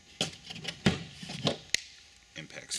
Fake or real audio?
real